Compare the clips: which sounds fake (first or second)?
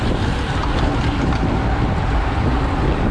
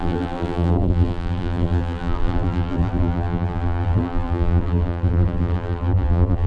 second